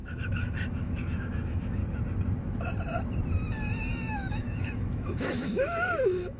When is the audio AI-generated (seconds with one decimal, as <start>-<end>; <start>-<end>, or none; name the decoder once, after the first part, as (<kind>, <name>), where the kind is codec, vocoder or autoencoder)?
0.0-1.8 (autoencoder, DAC-VAE); 4.3-6.4

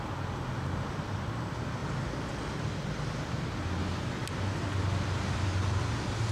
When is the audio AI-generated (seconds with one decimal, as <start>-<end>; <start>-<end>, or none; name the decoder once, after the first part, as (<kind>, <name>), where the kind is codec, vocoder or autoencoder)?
1.8-2.7 (vocoder, BigVGAN v2)

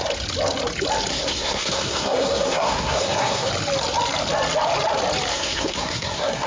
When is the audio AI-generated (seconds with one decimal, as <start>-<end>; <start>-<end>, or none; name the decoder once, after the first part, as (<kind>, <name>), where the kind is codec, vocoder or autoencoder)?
1.1-3.5 (codec, SNAC); 5.3-6.5